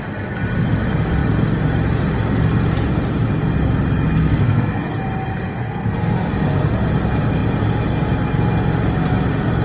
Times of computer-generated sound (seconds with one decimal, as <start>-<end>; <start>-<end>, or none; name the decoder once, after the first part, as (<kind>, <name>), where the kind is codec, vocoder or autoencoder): 4.2-5.0 (codec, SNAC); 5.5-6.3